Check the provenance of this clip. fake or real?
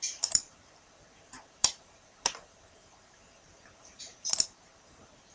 fake